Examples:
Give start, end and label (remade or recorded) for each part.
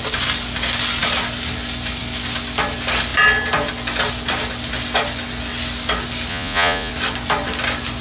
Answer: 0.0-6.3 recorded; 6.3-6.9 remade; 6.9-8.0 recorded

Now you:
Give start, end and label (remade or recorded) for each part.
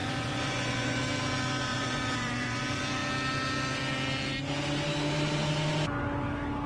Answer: 0.0-1.0 remade; 1.0-1.7 recorded; 1.7-2.6 remade; 2.6-6.7 recorded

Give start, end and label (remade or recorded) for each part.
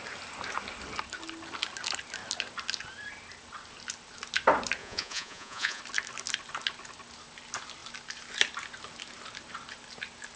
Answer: 0.0-4.8 recorded; 4.8-5.8 remade; 5.8-10.4 recorded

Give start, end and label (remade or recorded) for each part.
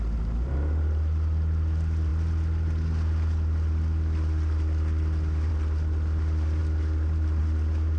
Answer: 0.0-8.0 recorded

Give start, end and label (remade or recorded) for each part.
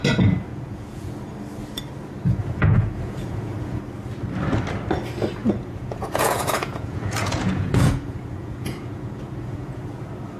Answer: 0.0-0.5 recorded; 0.5-1.1 remade; 1.1-2.4 recorded; 2.4-3.8 remade; 3.8-5.4 recorded; 5.4-9.8 remade; 9.8-10.4 recorded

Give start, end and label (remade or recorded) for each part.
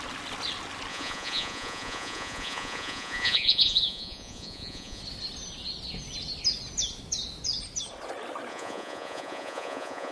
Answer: 0.0-0.9 recorded; 0.9-5.0 remade; 5.0-8.5 recorded; 8.5-10.1 remade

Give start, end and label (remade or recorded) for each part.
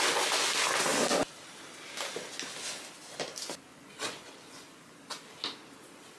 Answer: 0.0-3.7 recorded; 3.7-5.0 remade; 5.0-6.2 recorded